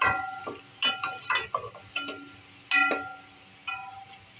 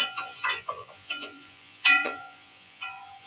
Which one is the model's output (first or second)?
second